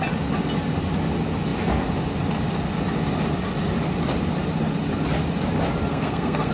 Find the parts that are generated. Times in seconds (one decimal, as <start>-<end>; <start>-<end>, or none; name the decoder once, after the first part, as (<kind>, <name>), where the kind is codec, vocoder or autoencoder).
5.9-6.5 (codec, SNAC)